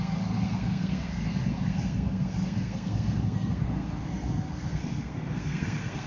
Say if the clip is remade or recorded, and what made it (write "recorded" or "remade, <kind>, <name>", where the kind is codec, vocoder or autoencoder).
remade, codec, SNAC